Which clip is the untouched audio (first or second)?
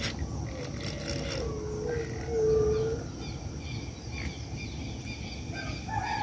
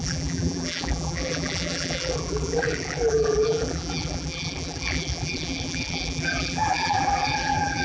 first